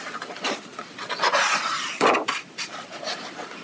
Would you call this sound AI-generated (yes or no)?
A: yes